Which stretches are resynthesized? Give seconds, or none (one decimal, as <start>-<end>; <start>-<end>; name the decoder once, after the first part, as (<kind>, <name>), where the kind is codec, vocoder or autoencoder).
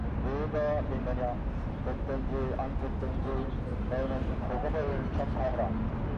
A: 3.2-3.8 (vocoder, BigVGAN v2); 4.2-5.1